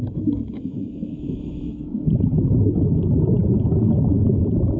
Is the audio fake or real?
fake